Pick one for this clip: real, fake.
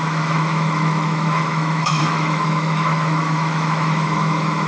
fake